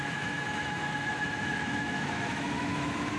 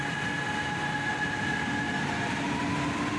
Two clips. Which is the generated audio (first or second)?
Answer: first